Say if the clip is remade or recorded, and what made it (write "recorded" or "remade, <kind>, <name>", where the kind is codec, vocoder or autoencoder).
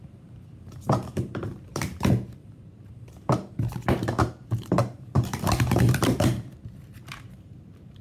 remade, vocoder, BigVGAN v2